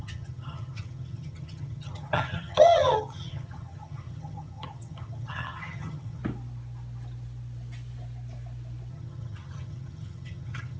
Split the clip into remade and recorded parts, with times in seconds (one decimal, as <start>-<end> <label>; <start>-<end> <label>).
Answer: 0.0-6.2 remade; 6.2-8.9 recorded; 8.9-10.8 remade